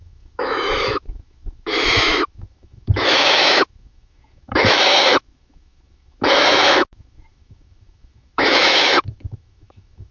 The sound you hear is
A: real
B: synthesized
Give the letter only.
B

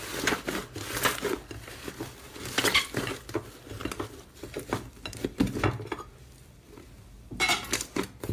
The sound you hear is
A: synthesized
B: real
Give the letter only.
B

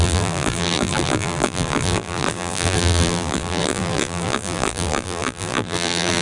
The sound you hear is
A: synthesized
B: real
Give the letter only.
A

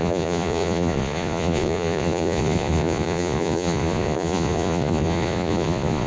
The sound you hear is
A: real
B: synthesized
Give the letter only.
B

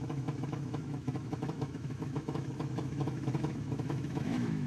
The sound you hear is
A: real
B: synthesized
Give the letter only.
B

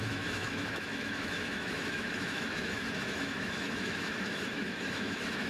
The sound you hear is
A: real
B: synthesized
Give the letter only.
B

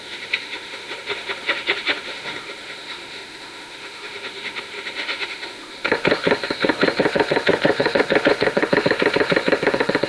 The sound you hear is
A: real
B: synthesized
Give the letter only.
B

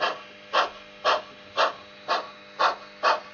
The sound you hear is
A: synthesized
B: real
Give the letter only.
B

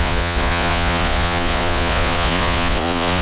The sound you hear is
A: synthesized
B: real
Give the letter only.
A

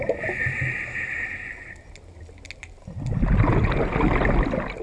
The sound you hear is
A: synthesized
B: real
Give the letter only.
B